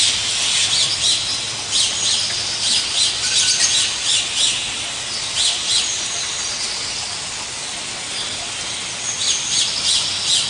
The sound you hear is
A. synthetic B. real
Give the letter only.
B